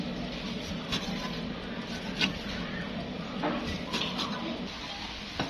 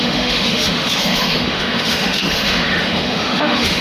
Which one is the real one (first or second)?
first